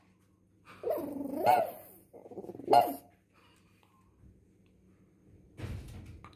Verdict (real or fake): real